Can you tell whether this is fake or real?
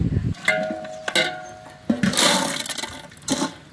real